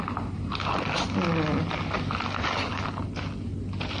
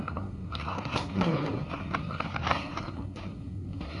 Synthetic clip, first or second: second